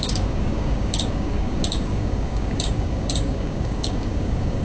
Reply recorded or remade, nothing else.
remade